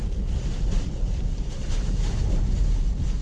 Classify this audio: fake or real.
fake